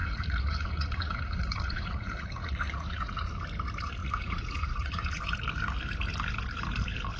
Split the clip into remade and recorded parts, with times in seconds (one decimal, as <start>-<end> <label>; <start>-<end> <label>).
0.0-3.3 remade; 3.3-4.0 recorded; 4.0-5.2 remade; 5.2-7.2 recorded